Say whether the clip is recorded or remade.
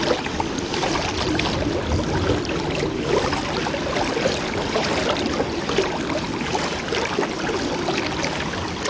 recorded